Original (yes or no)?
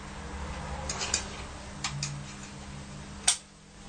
yes